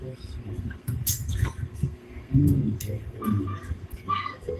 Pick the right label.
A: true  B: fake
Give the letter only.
B